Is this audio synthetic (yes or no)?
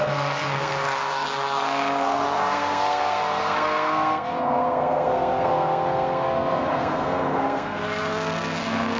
yes